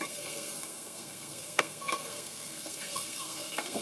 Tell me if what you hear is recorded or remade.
remade